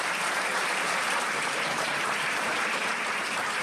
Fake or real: fake